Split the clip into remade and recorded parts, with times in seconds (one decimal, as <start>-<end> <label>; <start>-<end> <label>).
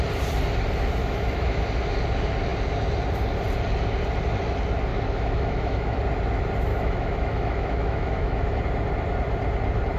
0.0-1.0 recorded; 1.0-1.6 remade; 1.6-4.9 recorded; 4.9-6.0 remade; 6.0-6.7 recorded; 6.7-8.6 remade; 8.6-10.0 recorded